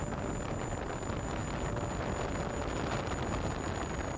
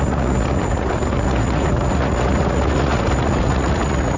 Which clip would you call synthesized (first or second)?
second